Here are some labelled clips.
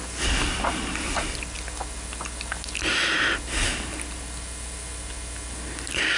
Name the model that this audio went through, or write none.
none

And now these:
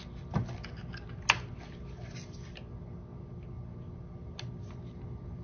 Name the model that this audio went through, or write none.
none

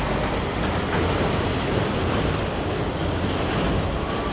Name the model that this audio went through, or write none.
none